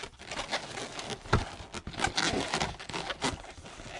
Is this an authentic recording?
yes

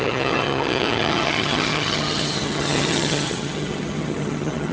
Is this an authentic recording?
no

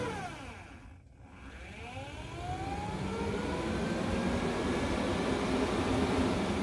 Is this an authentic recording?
yes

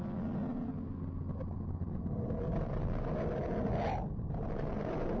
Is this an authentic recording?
yes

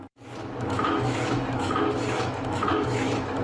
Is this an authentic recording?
no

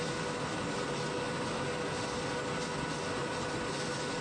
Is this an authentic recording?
yes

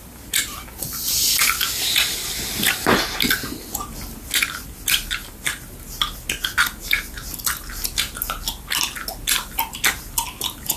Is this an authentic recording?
yes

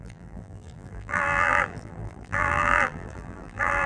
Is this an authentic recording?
no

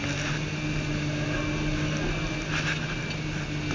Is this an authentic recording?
yes